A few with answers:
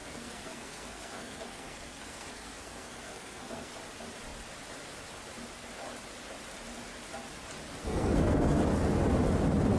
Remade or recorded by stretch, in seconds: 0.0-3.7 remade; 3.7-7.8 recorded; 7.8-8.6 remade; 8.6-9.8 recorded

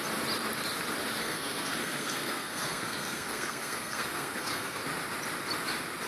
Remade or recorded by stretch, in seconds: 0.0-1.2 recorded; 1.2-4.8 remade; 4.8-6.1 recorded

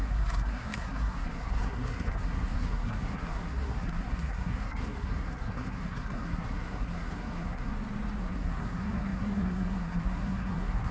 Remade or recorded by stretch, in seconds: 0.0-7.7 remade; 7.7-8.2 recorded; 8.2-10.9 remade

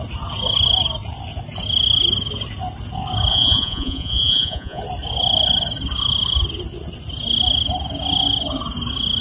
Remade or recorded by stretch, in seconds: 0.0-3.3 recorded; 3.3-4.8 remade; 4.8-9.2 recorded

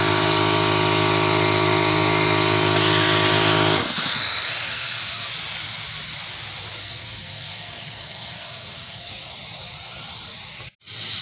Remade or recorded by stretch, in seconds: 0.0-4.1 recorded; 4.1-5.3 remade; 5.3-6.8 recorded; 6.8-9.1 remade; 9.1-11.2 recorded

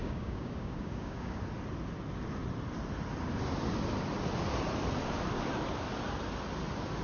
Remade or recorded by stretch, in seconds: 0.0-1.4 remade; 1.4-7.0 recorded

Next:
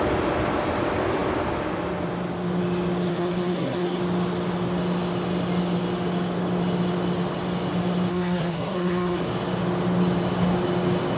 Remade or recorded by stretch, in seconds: 0.0-3.1 recorded; 3.1-4.0 remade; 4.0-8.1 recorded; 8.1-9.2 remade; 9.2-11.2 recorded